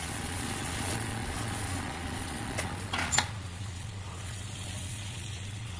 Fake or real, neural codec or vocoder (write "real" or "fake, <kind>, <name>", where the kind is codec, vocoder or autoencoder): fake, vocoder, Vocos